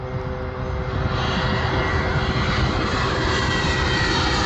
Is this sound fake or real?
real